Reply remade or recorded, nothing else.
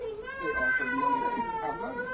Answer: remade